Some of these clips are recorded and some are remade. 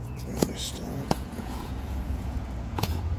remade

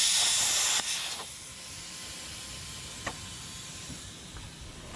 recorded